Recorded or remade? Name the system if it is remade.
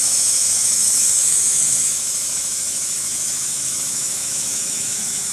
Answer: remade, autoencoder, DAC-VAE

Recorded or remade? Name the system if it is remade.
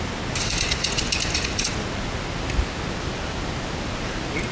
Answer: recorded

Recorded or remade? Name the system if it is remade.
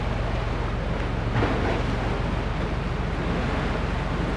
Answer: recorded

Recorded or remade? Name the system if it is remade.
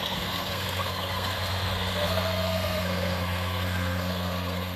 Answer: remade, codec, SNAC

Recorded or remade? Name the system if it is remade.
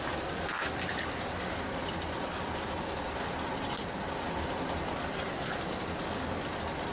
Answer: recorded